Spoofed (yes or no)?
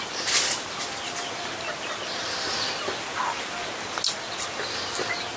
no